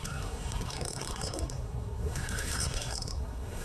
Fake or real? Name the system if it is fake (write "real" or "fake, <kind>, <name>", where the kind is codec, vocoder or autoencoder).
fake, codec, SNAC